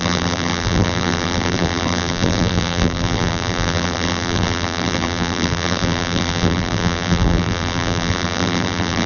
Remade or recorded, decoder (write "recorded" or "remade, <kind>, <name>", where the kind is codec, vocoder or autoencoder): remade, vocoder, BigVGAN v2